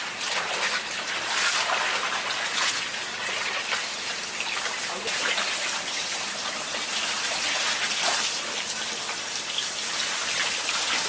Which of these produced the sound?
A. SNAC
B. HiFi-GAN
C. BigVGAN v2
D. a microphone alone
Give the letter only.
D